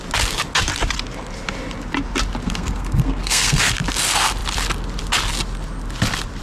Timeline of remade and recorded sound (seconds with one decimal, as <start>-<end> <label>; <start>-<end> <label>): 0.0-2.4 recorded; 2.4-3.6 remade; 3.6-6.4 recorded